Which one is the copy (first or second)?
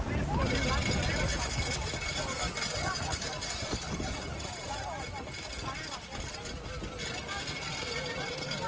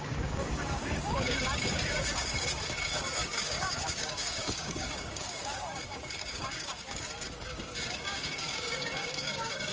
second